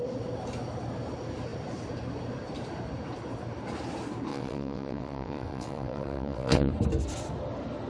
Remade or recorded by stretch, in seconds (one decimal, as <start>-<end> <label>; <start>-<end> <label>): 0.0-4.3 recorded; 4.3-6.7 remade; 6.7-7.9 recorded